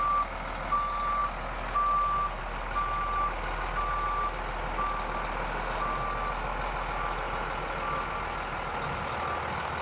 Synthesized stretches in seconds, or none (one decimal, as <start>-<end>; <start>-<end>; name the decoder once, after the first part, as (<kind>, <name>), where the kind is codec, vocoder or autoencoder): none